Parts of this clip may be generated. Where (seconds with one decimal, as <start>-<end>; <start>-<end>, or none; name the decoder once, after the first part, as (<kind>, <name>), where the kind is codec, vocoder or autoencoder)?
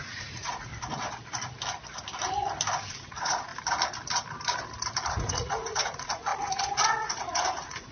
0.0-0.7 (vocoder, Vocos); 2.9-3.5; 5.1-7.9